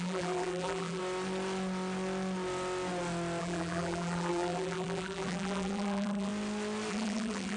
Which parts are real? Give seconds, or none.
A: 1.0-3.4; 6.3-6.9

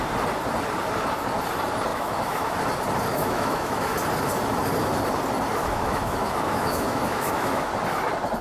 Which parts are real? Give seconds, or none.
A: 0.0-1.9; 2.6-3.1; 3.9-5.6; 7.7-8.4

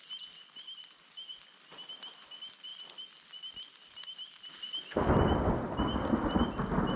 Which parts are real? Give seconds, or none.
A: 0.0-7.0